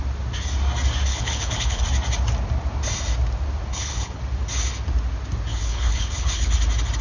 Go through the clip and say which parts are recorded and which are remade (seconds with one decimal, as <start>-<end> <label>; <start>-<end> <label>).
0.0-1.1 recorded; 1.1-1.8 remade; 1.8-3.7 recorded; 3.7-4.2 remade; 4.2-5.5 recorded; 5.5-6.5 remade; 6.5-7.0 recorded